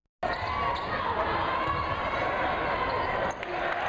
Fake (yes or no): no